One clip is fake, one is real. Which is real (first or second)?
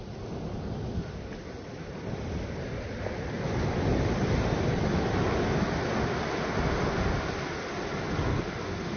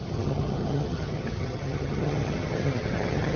first